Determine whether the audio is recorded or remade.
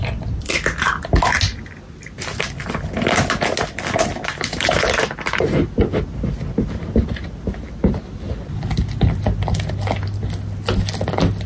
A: recorded